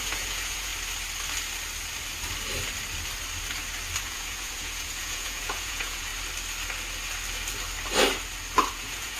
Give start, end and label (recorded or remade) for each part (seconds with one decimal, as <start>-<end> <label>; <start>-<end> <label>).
0.0-0.7 remade; 0.7-4.0 recorded; 4.0-6.1 remade; 6.1-8.7 recorded; 8.7-9.2 remade